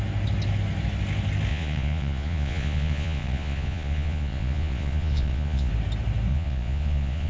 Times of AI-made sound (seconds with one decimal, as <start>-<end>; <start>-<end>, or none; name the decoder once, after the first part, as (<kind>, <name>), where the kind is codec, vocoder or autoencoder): 1.5-5.7 (vocoder, Vocos); 6.3-7.3